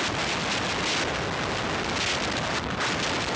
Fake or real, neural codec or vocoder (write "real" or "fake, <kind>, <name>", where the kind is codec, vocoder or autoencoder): real